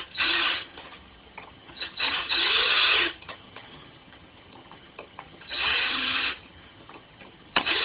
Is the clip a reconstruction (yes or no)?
yes